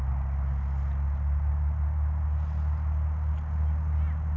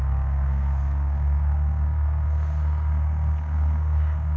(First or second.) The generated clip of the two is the second